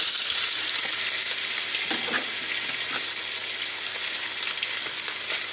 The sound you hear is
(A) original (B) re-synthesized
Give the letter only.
A